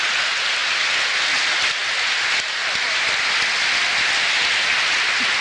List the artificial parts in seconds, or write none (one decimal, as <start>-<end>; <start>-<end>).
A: none